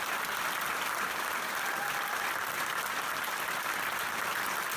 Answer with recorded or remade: recorded